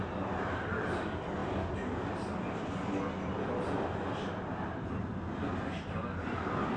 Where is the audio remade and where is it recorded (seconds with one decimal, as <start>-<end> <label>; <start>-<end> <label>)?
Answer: 0.0-6.8 recorded